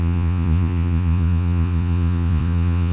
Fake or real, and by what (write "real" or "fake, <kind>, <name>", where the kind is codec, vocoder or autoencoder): fake, vocoder, Vocos